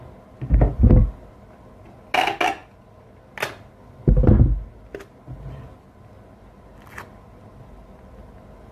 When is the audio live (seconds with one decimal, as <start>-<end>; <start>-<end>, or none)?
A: 0.0-8.7